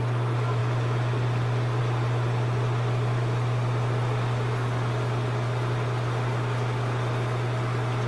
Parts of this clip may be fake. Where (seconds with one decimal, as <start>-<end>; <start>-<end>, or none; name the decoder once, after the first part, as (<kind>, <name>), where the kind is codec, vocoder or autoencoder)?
0.6-1.8 (vocoder, BigVGAN v2)